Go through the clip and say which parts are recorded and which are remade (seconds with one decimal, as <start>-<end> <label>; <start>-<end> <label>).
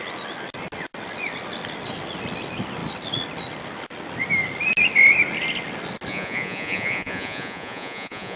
0.0-6.1 recorded; 6.1-8.4 remade